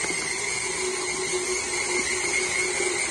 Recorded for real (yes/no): yes